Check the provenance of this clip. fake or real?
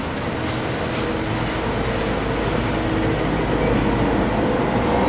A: real